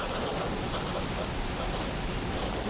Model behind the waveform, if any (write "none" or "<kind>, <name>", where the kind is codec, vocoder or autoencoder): none